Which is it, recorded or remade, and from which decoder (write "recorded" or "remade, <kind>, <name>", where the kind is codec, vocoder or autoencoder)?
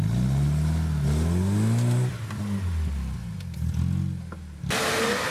recorded